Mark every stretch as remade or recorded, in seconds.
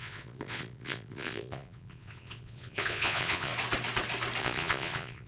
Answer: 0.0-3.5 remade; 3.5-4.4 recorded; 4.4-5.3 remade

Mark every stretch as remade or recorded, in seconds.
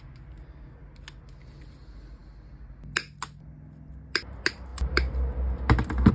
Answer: 0.0-6.1 recorded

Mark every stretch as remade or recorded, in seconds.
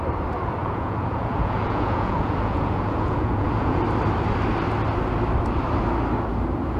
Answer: 0.0-0.6 recorded; 0.6-3.8 remade; 3.8-6.8 recorded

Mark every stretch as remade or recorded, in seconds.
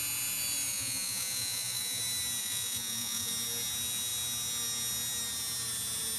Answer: 0.0-0.7 recorded; 0.7-2.0 remade; 2.0-2.4 recorded; 2.4-3.3 remade; 3.3-6.2 recorded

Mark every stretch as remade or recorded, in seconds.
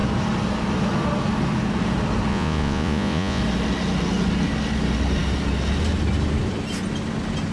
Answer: 0.0-2.3 recorded; 2.3-3.4 remade; 3.4-7.5 recorded